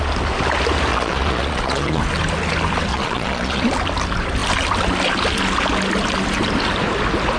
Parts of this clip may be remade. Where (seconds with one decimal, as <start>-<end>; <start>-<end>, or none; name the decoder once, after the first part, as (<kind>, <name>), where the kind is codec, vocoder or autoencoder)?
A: 0.9-2.0 (vocoder, Vocos); 2.9-3.6